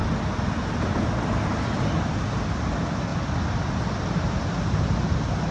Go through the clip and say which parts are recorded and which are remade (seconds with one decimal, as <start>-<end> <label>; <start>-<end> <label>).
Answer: 0.0-5.5 recorded